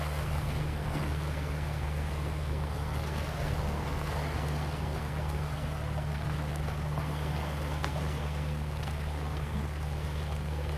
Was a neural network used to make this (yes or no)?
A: yes